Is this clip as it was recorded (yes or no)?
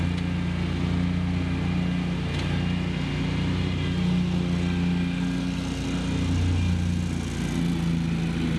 yes